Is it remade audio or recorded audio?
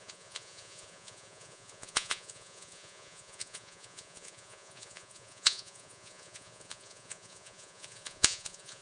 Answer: remade